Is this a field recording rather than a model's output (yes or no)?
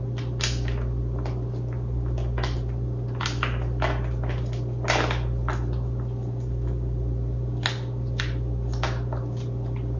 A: yes